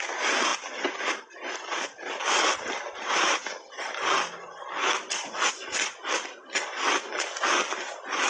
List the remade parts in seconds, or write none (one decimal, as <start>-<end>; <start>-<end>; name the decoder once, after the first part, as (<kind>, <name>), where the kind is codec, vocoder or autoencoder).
none